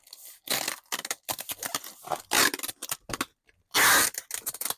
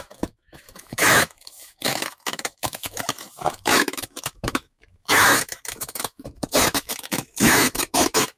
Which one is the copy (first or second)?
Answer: second